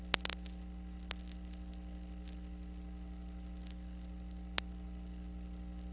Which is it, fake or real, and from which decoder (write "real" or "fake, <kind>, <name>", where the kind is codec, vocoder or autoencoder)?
real